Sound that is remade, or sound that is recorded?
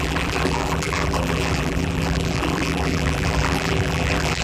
remade